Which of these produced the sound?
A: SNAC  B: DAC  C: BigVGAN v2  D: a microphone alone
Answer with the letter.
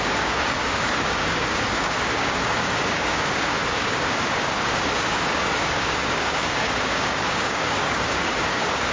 B